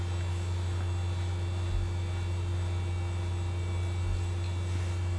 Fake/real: real